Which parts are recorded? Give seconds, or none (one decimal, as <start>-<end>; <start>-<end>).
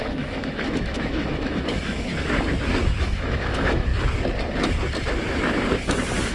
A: 2.1-3.0; 3.9-6.3